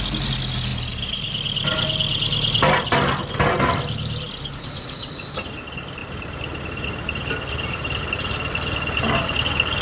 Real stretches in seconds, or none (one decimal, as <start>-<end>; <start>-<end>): 0.0-9.8

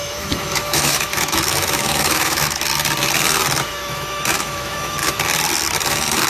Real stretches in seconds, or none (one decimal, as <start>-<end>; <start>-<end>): 2.7-3.6; 5.0-6.3

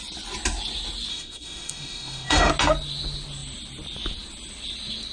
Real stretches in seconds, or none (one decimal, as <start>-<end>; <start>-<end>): 0.0-1.1; 2.5-5.1

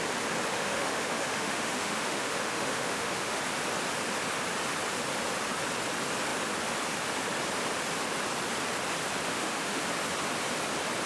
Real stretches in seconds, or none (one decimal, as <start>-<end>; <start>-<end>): 0.0-0.5; 3.4-9.3; 9.8-11.1

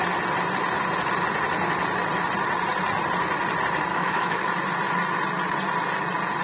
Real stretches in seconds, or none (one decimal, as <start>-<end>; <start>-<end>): 0.0-3.9; 4.5-6.4